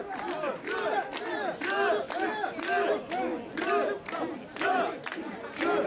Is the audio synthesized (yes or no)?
no